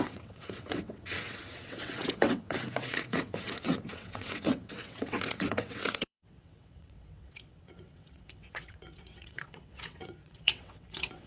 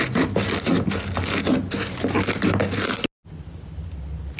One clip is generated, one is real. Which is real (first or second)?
second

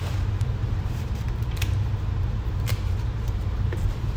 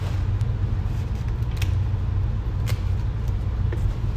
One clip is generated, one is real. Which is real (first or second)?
second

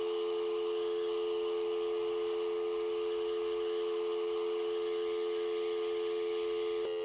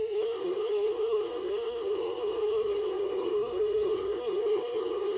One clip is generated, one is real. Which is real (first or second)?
first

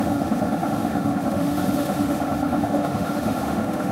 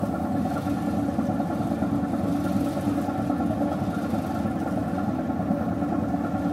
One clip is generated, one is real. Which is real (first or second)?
second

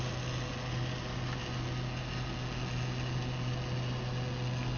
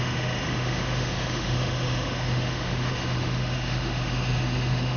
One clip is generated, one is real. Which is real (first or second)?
first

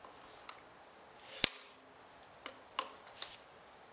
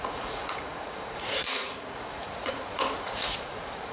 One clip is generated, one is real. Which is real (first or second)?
first